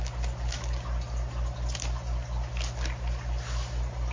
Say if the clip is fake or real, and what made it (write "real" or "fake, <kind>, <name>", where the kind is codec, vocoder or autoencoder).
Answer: real